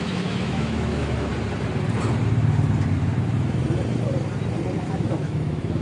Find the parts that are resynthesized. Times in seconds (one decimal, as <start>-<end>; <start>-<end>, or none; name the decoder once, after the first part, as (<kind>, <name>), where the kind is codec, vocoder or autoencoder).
0.0-1.3 (autoencoder, DAC-VAE); 4.8-5.8